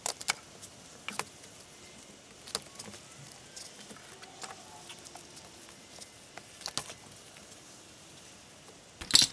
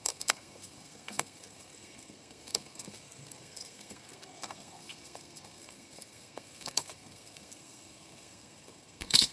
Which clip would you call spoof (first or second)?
second